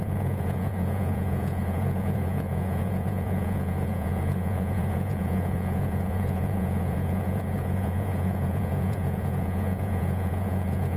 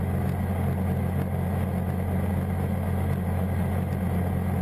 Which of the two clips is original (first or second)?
second